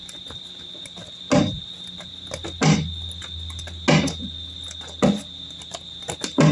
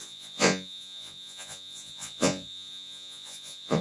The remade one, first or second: second